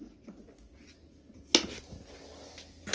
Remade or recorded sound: recorded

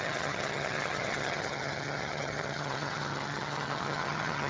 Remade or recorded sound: remade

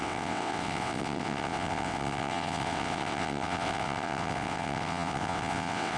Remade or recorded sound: remade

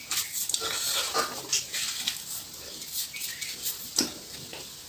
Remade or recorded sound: recorded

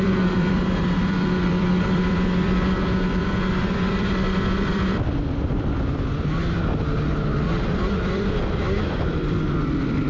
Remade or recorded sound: remade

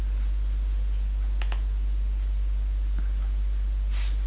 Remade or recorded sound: recorded